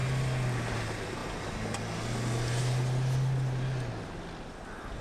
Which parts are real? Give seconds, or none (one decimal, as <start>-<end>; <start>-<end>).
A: 0.0-5.0